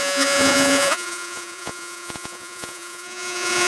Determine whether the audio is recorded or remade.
remade